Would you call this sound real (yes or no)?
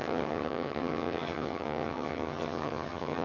no